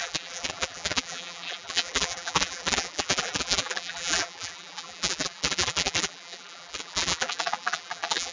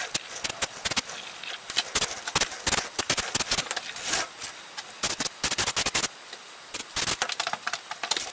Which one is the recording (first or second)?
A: second